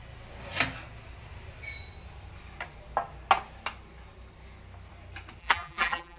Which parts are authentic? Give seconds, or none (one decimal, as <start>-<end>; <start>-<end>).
0.0-5.4